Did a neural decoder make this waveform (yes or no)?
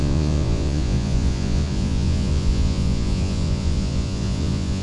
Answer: yes